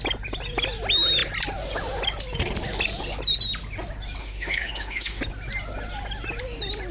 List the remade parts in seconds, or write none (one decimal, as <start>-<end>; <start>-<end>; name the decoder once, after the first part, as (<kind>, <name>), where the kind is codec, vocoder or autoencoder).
4.2-5.2 (autoencoder, DAC-VAE)